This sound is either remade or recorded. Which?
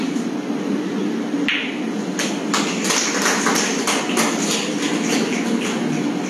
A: recorded